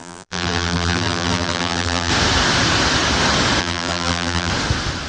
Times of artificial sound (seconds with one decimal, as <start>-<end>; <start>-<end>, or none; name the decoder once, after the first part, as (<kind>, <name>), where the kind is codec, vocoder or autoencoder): 0.0-2.1 (vocoder, BigVGAN v2); 3.6-4.5